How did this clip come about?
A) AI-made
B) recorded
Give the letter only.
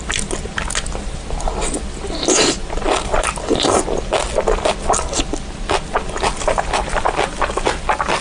B